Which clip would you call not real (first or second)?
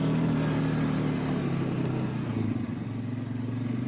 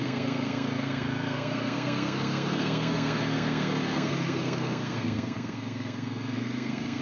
second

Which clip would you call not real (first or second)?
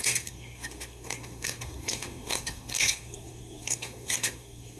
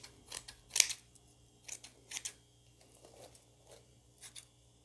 first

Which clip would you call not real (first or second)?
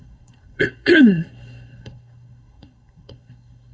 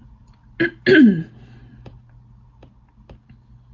first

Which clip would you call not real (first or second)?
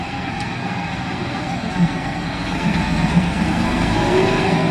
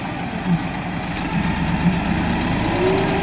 first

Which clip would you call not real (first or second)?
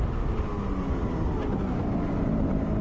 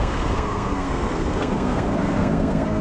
second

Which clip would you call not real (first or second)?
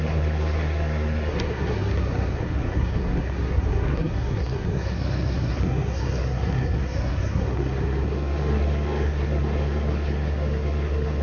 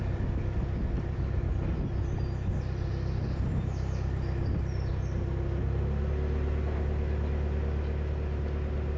first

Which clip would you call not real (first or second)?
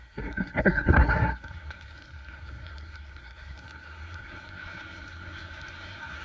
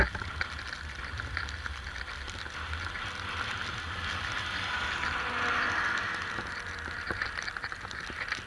first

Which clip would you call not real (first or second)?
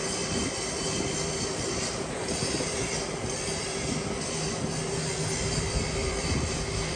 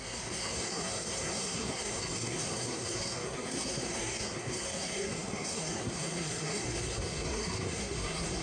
second